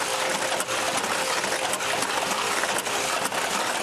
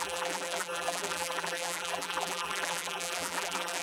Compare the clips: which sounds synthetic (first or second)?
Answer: second